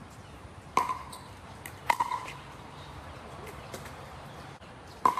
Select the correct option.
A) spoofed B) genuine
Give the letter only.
A